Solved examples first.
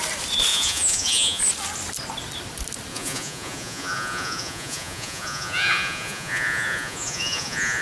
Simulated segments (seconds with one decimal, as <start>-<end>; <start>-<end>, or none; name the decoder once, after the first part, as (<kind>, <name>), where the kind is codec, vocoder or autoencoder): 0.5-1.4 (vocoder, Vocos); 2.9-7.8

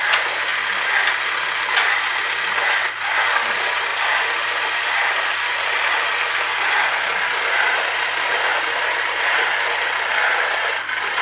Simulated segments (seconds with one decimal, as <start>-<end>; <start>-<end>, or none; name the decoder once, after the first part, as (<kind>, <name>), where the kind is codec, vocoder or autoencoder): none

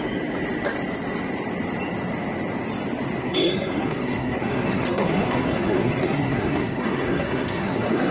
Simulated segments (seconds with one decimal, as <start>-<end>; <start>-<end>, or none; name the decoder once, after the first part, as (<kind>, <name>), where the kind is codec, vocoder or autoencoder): 3.2-8.1 (codec, SNAC)